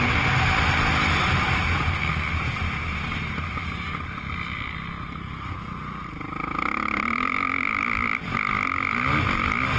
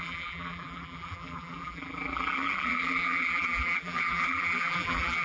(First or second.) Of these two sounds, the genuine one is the first